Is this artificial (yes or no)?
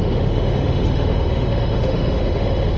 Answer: yes